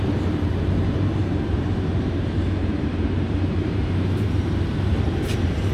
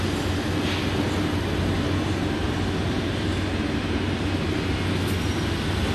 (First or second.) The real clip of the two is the second